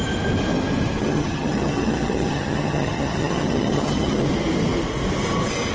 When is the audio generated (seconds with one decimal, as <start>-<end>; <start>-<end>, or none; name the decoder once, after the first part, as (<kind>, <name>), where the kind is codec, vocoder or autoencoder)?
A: 1.0-4.2 (vocoder, HiFi-GAN)